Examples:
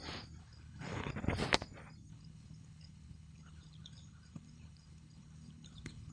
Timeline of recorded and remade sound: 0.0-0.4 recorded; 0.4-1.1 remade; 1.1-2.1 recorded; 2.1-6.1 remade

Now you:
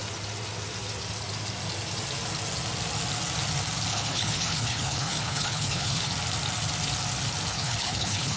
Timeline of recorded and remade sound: 0.0-3.9 recorded; 3.9-6.1 remade; 6.1-7.5 recorded; 7.5-8.4 remade